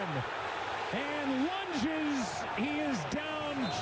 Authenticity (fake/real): real